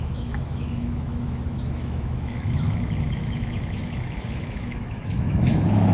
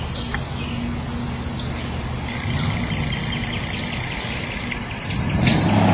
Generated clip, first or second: first